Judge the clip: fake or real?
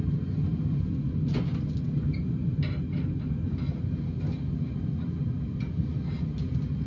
real